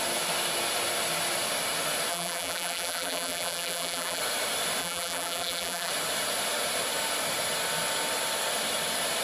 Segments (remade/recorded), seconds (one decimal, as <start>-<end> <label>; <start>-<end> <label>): 0.0-2.1 recorded; 2.1-4.2 remade; 4.2-4.8 recorded; 4.8-5.9 remade; 5.9-9.2 recorded